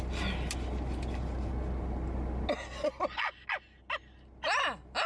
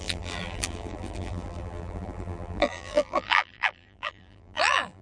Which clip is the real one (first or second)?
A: first